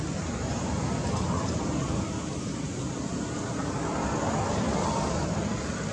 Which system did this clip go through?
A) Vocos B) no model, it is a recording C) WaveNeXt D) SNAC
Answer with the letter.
B